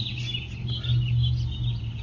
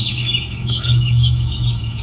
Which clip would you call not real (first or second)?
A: second